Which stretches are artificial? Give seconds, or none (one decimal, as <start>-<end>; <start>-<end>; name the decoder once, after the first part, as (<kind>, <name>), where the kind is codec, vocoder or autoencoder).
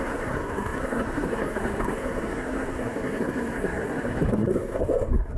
0.0-5.4 (codec, SNAC)